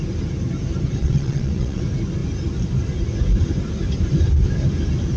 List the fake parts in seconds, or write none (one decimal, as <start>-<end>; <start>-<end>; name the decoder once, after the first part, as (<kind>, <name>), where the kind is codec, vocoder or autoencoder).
1.0-1.8 (vocoder, WaveNeXt)